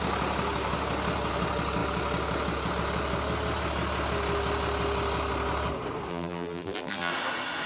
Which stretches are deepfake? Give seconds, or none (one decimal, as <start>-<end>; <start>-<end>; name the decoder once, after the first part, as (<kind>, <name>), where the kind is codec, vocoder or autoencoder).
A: 6.1-7.1 (vocoder, BigVGAN v2)